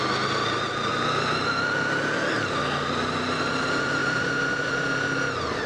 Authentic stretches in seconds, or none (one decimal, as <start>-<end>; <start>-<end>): 0.0-4.0; 4.7-5.7